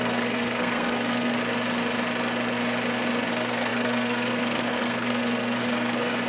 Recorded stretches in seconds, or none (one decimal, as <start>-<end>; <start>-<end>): 1.4-3.3